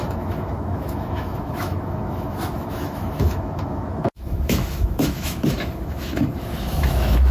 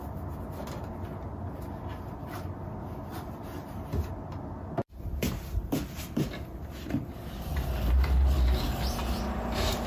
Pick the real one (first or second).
second